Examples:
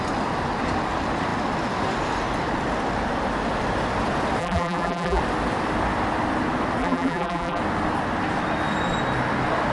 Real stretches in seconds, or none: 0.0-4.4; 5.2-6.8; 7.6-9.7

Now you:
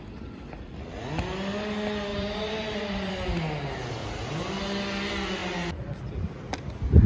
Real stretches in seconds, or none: 0.0-2.1; 3.1-4.0; 4.6-7.1

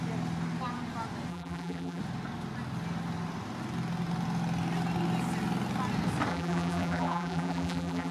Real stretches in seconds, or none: 0.0-1.3; 2.0-6.3

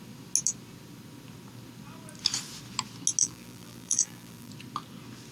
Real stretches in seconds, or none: 0.0-3.2; 4.5-5.3

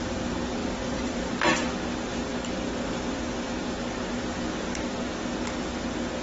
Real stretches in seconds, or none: 0.0-0.6; 1.7-6.2

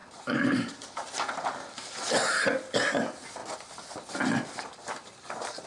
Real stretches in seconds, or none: 0.0-5.7